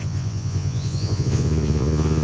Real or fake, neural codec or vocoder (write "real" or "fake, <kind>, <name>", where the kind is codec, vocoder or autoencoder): fake, vocoder, Vocos